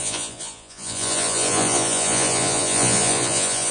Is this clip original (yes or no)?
no